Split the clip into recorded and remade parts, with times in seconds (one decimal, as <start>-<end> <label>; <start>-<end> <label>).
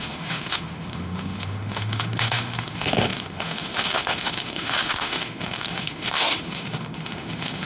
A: 0.0-7.7 remade